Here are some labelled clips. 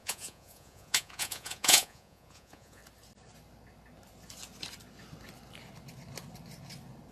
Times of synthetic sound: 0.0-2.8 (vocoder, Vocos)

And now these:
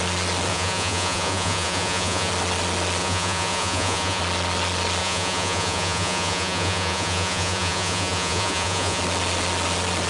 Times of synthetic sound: 0.5-2.3 (vocoder, Vocos); 3.0-4.2; 5.0-9.0

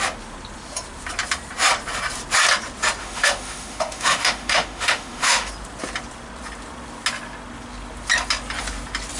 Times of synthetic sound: 3.0-5.5 (autoencoder, DAC-VAE)

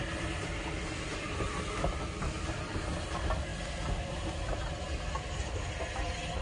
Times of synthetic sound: none

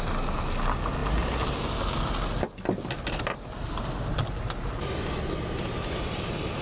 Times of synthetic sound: none